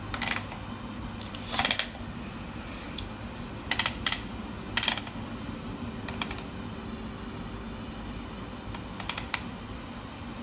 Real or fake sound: real